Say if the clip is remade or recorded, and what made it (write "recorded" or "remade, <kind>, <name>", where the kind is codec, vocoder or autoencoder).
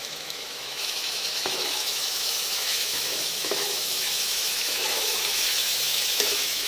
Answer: remade, autoencoder, DAC-VAE